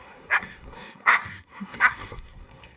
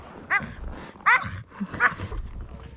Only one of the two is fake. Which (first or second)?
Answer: first